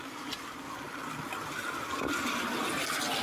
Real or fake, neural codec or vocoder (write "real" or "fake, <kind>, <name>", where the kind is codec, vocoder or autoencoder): real